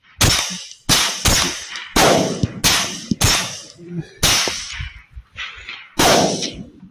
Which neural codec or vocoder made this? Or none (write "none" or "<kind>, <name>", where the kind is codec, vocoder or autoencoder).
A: none